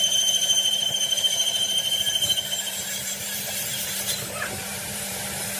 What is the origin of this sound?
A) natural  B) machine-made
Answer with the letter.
B